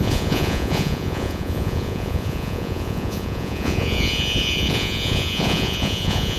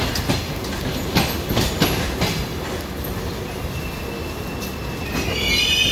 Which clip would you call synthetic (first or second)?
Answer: first